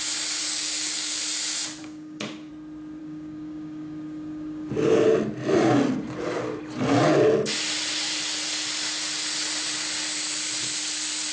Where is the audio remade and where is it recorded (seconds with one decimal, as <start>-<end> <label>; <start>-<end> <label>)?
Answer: 0.0-0.4 recorded; 0.4-1.2 remade; 1.2-1.8 recorded; 1.8-2.5 remade; 2.5-3.0 recorded; 3.0-4.7 remade; 4.7-11.3 recorded